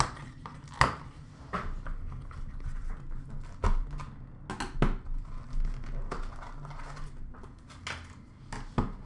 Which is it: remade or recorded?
recorded